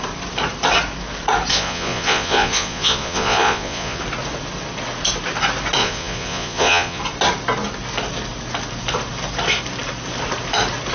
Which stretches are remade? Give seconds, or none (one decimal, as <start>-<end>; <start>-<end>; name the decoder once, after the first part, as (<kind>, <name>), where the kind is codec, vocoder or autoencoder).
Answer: 1.5-4.0 (vocoder, Vocos); 5.8-7.0